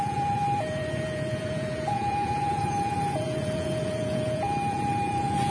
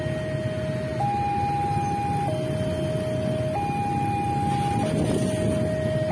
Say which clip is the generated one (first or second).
first